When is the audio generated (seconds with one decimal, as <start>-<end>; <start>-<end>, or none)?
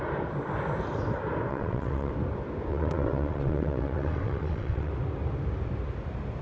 1.5-2.1; 2.7-4.9